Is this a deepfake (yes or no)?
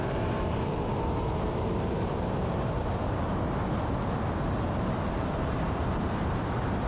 yes